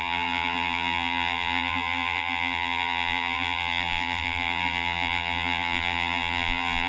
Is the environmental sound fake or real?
fake